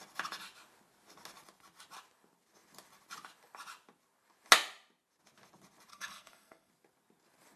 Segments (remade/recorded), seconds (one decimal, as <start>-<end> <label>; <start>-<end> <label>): 0.0-5.9 recorded; 5.9-6.7 remade; 6.7-7.6 recorded